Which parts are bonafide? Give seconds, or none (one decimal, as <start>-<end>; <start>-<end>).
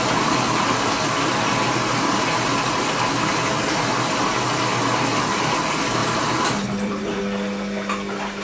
0.0-6.0; 7.2-8.4